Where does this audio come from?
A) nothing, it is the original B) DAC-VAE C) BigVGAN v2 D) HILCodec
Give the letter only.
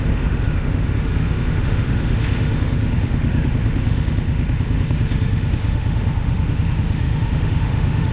B